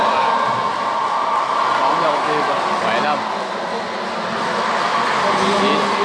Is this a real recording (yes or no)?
yes